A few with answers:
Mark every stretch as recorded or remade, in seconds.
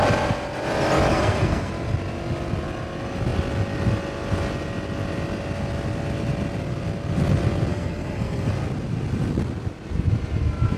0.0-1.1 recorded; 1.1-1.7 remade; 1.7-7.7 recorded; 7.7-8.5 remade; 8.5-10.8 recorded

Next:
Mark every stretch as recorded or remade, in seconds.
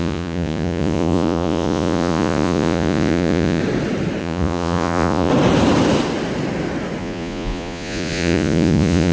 0.0-3.6 remade; 3.6-4.2 recorded; 4.2-5.3 remade; 5.3-7.0 recorded; 7.0-9.1 remade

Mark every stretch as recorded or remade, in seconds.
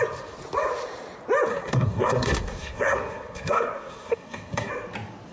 0.0-1.5 recorded; 1.5-4.7 remade; 4.7-5.3 recorded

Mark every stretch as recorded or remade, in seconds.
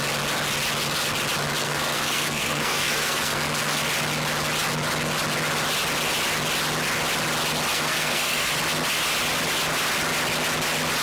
0.0-1.6 recorded; 1.6-3.8 remade; 3.8-7.7 recorded; 7.7-8.5 remade; 8.5-11.0 recorded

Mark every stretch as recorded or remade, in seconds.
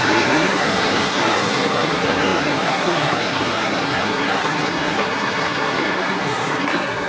0.0-7.1 remade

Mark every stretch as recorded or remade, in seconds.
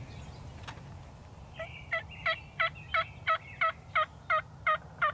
0.0-5.1 recorded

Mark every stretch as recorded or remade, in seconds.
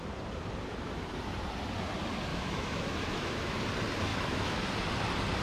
0.0-2.3 recorded; 2.3-3.6 remade; 3.6-4.1 recorded; 4.1-4.7 remade; 4.7-5.4 recorded